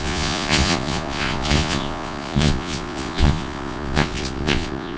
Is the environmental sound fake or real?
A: fake